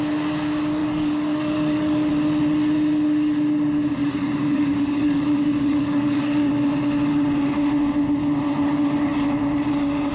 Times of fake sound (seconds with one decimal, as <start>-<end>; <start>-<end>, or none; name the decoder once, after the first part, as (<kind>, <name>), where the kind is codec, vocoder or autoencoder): 0.8-2.1 (codec, DAC); 4.0-6.5